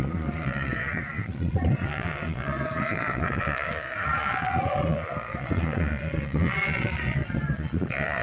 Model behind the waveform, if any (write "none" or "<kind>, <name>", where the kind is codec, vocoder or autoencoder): vocoder, Vocos